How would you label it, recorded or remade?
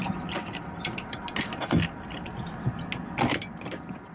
recorded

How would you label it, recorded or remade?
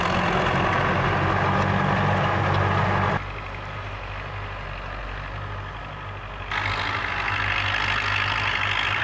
recorded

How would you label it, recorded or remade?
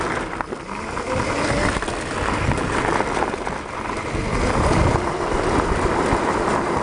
recorded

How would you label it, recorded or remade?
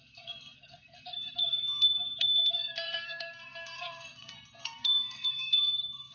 remade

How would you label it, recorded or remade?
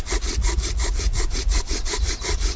remade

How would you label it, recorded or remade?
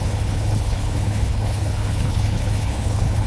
remade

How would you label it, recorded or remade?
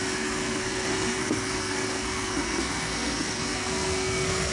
remade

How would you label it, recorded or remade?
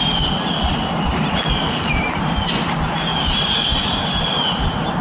recorded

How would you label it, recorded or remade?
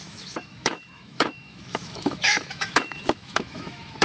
remade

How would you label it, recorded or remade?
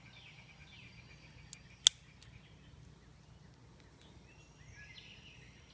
recorded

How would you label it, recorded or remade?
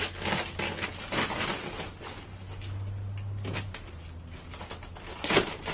recorded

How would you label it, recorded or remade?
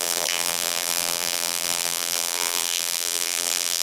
remade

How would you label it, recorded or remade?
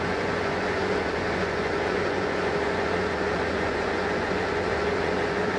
remade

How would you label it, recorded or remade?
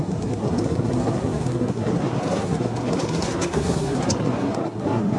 remade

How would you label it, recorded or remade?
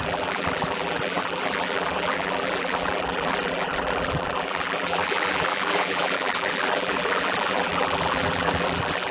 remade